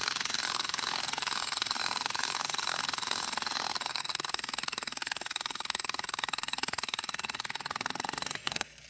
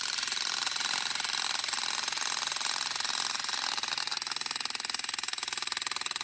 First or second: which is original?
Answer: second